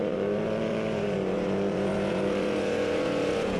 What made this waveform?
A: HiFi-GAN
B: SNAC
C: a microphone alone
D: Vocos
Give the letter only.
D